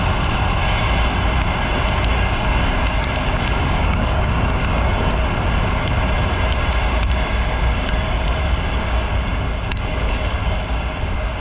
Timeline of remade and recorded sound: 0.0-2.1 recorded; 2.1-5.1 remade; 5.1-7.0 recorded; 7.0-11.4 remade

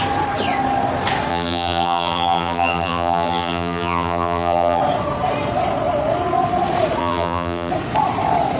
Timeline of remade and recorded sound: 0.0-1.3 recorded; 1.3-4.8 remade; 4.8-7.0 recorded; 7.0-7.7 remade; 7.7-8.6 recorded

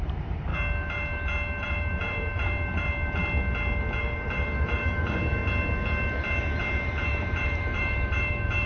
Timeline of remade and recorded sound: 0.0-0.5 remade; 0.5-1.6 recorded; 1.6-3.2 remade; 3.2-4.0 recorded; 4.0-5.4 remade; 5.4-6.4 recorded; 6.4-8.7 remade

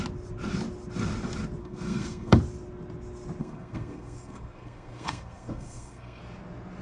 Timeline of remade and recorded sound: 0.0-1.6 recorded; 1.6-2.4 remade; 2.4-3.4 recorded; 3.4-6.2 remade; 6.2-6.8 recorded

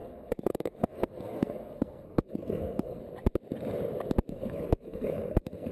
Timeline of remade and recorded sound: 0.0-3.0 remade; 3.0-4.3 recorded; 4.3-5.7 remade